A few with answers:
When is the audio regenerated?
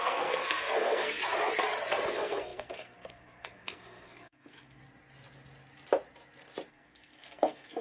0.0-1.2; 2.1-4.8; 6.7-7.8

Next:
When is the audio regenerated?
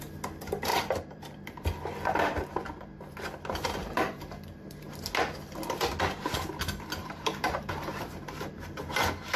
0.7-1.2; 3.8-4.9; 7.0-8.7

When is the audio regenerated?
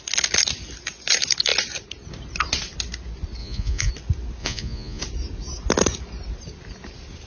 3.4-3.9; 4.4-5.0